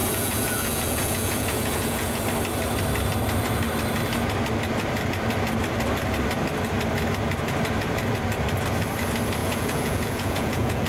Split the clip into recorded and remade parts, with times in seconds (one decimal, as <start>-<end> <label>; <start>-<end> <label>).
0.0-2.2 remade; 2.2-9.4 recorded; 9.4-10.9 remade